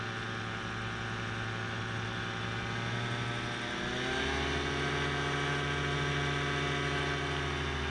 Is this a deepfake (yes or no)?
no